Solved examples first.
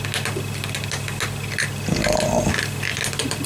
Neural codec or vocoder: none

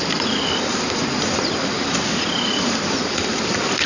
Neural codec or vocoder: vocoder, BigVGAN v2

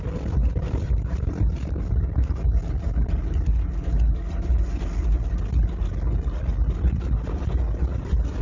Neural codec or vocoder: none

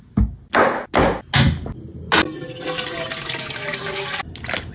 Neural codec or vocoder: none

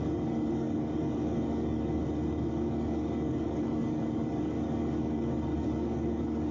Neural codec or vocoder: codec, DAC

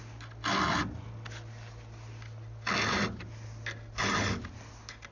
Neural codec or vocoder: none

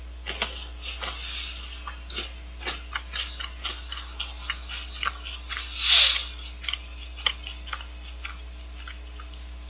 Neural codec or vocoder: none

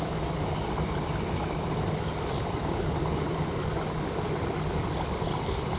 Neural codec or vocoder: none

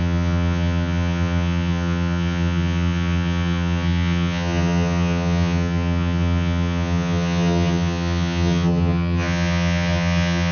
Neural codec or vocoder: vocoder, HiFi-GAN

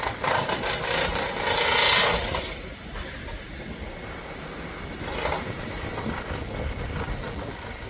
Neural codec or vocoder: none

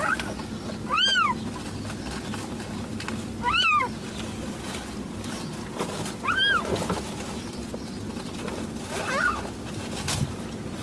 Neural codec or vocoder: none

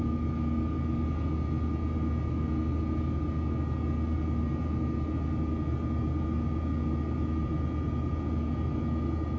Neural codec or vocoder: none